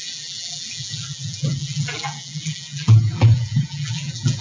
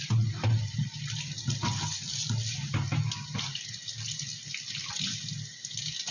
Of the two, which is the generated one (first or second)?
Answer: first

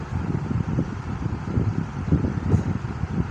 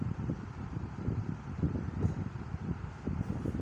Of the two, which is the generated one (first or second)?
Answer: first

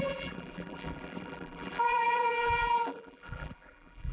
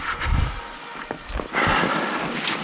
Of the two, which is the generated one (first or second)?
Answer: first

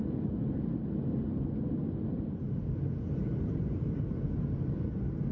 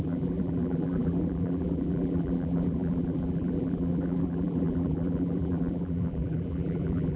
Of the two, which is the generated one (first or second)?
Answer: second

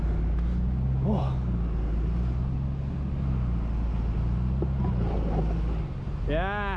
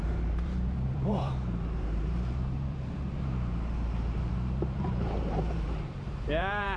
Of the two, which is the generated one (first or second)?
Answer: second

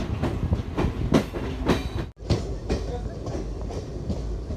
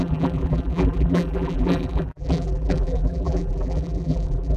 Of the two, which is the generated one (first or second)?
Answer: second